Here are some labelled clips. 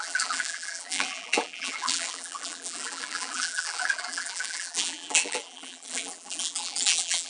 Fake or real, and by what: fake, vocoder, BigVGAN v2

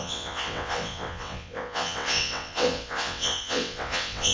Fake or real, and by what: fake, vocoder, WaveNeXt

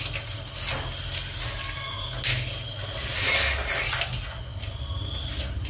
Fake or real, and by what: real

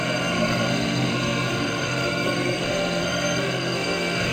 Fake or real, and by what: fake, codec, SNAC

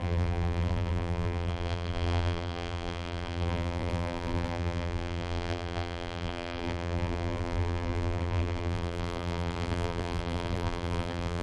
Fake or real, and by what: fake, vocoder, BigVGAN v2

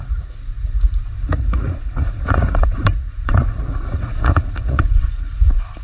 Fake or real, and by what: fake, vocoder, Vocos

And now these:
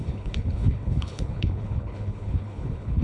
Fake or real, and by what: fake, codec, HILCodec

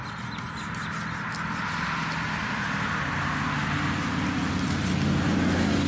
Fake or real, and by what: real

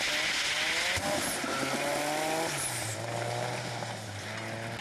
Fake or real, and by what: real